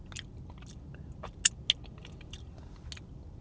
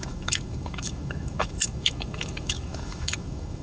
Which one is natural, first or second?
first